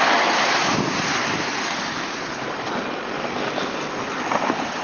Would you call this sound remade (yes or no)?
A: no